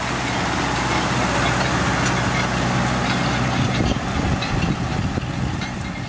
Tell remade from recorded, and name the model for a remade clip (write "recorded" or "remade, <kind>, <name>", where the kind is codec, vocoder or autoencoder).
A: recorded